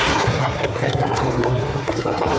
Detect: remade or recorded remade